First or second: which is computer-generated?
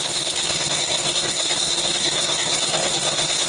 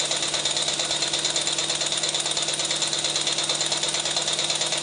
first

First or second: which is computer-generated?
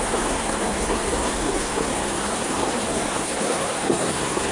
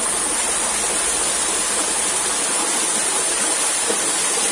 first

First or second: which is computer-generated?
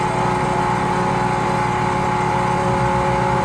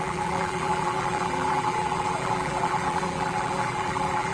second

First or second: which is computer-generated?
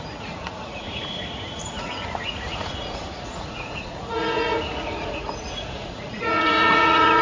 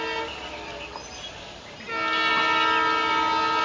first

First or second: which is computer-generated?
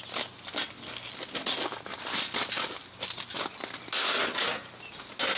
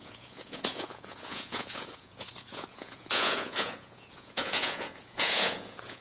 second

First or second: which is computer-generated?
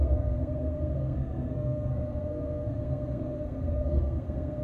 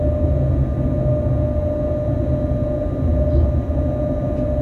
first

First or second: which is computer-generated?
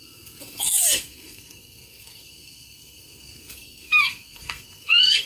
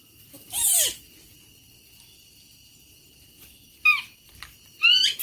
first